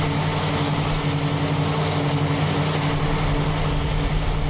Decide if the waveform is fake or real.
real